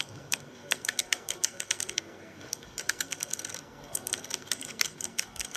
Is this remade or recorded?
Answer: remade